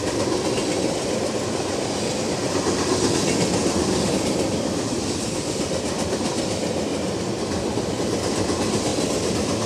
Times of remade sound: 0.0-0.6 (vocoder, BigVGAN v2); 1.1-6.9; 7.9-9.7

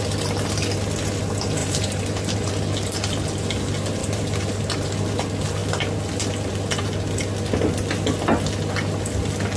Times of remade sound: 1.6-2.5 (vocoder, BigVGAN v2); 4.0-4.6

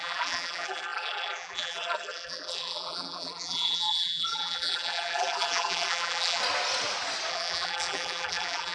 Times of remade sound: 0.0-6.4 (vocoder, BigVGAN v2); 7.3-8.7

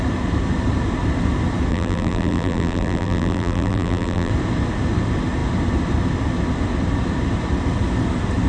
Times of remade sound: 1.7-4.3 (vocoder, BigVGAN v2)

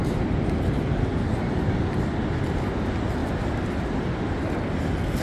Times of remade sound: 3.2-3.8 (vocoder, BigVGAN v2)